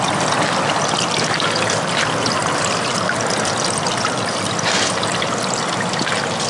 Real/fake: real